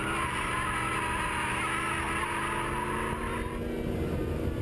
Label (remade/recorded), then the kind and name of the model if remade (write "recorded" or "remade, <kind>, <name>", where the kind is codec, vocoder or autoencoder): recorded